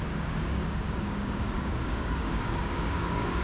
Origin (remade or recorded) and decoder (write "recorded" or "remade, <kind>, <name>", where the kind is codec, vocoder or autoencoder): remade, codec, DAC